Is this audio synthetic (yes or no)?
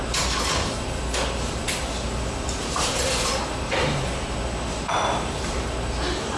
no